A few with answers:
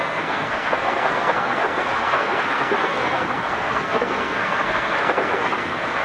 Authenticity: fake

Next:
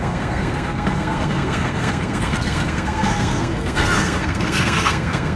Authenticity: fake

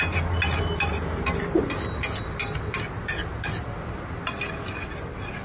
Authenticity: real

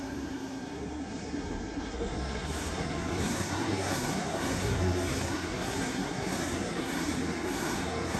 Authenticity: fake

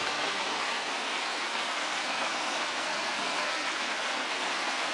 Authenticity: fake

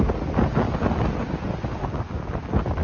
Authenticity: real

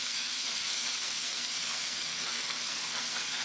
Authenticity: fake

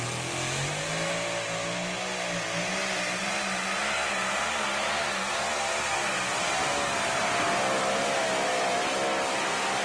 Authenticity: real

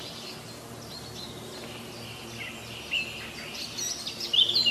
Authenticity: real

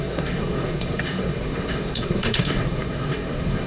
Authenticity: fake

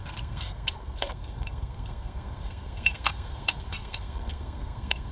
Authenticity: fake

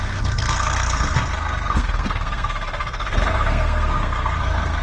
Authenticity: fake